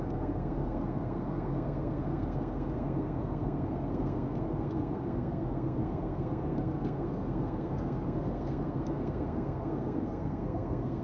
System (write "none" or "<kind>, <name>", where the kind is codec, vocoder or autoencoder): codec, SNAC